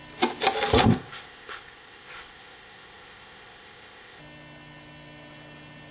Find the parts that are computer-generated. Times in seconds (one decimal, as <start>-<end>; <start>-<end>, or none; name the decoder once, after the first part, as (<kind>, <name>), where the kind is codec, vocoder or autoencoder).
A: 0.8-4.2 (codec, ZipCodec)